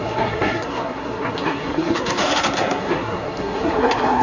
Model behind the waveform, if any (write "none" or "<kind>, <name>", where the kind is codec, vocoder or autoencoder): codec, SNAC